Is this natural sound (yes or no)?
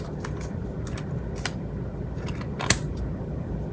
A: yes